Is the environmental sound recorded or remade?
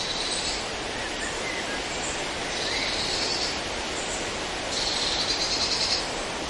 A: recorded